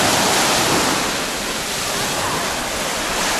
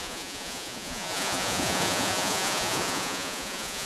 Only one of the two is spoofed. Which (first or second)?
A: second